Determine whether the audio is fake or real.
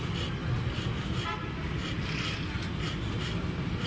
real